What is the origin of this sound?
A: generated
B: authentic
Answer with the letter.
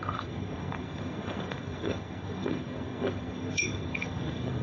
A